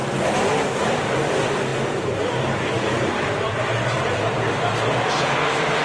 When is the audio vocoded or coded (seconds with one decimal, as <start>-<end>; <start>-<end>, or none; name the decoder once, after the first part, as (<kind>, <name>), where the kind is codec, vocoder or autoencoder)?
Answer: 0.8-5.8 (vocoder, BigVGAN v2)